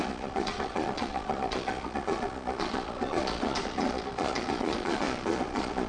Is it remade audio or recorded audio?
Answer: remade